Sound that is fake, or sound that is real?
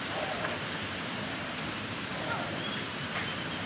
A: fake